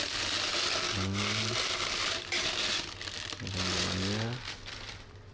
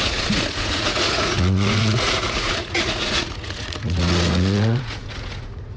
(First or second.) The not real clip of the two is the second